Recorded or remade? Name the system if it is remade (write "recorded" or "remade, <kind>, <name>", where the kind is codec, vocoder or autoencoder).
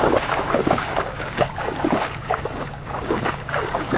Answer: remade, codec, DAC